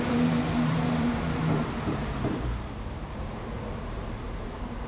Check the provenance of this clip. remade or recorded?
remade